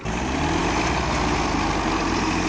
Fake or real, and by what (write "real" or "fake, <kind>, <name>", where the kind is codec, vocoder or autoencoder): real